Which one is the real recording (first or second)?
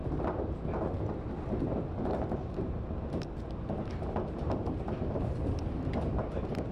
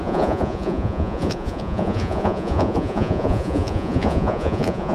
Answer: first